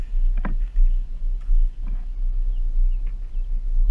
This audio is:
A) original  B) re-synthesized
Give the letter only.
A